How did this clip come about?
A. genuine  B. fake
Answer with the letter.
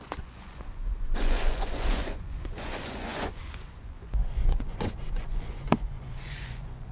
B